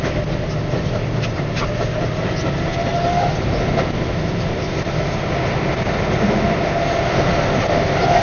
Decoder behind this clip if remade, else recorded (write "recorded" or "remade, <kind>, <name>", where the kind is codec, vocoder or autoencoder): recorded